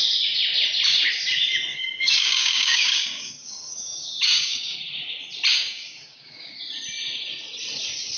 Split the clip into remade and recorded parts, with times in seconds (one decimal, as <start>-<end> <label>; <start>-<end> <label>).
0.0-1.7 recorded; 1.7-4.8 remade; 4.8-5.5 recorded; 5.5-6.6 remade; 6.6-8.2 recorded